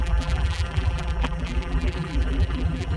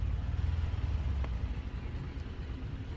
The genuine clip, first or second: second